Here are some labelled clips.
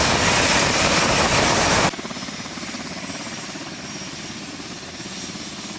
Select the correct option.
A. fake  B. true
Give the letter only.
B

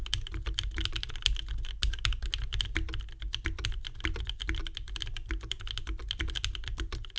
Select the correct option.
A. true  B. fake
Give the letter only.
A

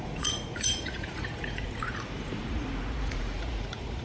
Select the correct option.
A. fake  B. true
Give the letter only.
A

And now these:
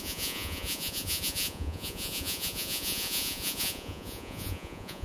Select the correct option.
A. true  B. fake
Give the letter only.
B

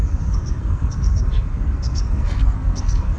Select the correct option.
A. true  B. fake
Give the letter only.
B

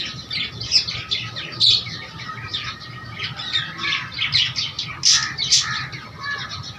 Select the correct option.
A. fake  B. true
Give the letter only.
B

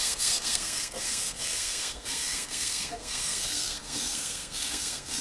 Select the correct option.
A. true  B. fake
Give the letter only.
B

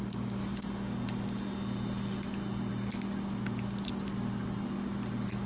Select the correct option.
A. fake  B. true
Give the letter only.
B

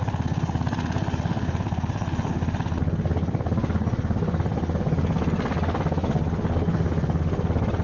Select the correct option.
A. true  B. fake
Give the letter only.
A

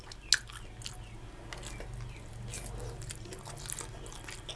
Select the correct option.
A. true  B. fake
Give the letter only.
A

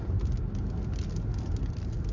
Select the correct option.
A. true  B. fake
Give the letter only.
A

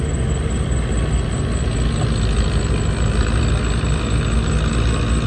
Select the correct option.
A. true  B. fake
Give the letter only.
A